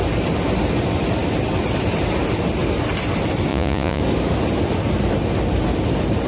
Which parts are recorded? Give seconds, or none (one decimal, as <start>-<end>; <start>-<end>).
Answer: 0.0-3.5; 4.0-6.3